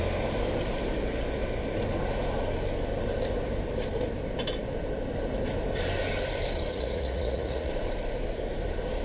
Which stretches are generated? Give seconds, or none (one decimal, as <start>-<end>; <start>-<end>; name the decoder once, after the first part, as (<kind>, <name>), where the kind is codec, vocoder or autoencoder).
6.7-7.7 (vocoder, Vocos)